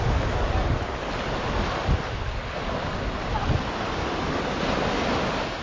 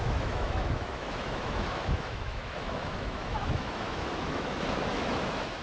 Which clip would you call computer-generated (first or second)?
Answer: second